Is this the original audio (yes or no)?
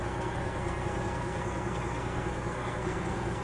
no